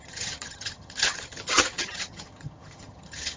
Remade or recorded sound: remade